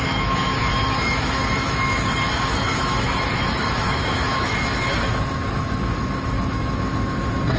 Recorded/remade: remade